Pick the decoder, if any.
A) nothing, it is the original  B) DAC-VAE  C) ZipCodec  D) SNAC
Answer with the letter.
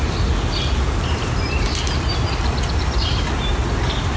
A